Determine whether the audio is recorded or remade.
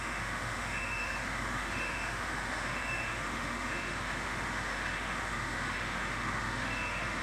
remade